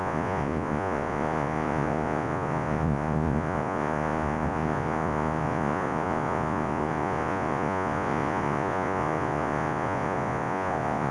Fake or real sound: fake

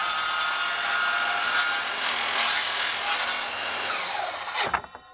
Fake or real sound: real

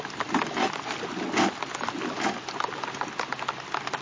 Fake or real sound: real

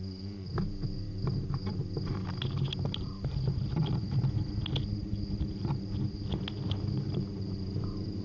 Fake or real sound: real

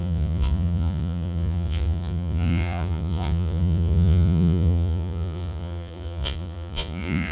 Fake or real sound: fake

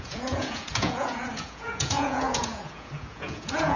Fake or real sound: fake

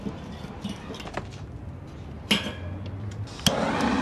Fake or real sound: real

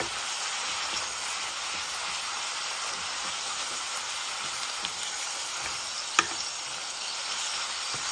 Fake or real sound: real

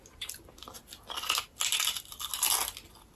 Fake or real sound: real